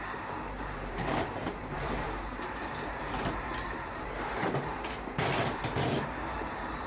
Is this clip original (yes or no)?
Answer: no